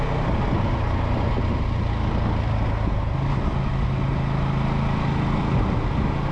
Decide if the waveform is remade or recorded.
recorded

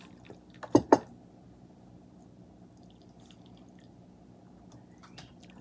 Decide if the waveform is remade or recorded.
recorded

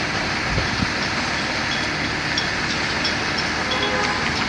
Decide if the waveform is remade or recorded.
recorded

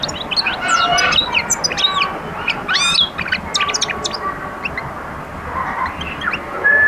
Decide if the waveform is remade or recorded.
recorded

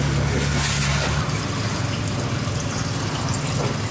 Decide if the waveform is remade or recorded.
recorded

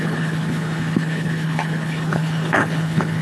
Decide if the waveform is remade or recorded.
remade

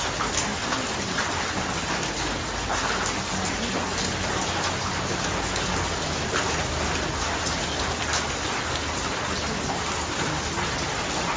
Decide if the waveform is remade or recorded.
recorded